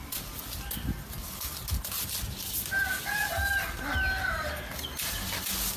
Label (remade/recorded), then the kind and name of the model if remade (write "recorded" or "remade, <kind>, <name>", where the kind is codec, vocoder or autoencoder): recorded